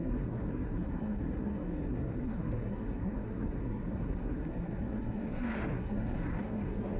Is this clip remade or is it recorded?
remade